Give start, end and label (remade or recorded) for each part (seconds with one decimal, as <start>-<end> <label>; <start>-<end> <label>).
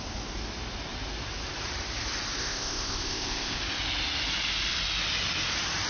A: 0.0-2.4 recorded; 2.4-3.6 remade; 3.6-5.9 recorded